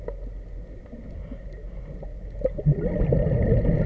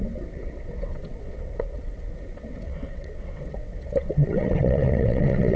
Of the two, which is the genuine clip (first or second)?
first